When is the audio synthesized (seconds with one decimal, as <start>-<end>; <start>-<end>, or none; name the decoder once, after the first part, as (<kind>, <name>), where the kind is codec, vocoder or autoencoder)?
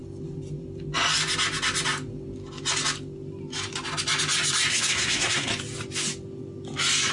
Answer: 4.7-5.5 (codec, SNAC)